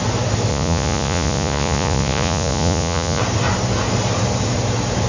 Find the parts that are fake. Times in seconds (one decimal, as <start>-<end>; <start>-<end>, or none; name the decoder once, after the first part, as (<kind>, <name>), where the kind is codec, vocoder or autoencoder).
0.5-3.2 (vocoder, Vocos)